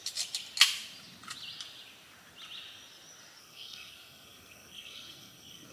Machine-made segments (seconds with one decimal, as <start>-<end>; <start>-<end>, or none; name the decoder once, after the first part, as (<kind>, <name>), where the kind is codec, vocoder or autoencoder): 3.4-5.7 (codec, SNAC)